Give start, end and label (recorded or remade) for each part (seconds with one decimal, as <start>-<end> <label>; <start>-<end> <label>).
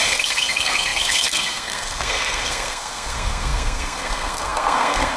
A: 0.0-5.2 remade